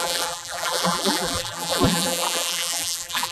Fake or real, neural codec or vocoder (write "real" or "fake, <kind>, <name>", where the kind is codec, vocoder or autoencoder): fake, vocoder, BigVGAN v2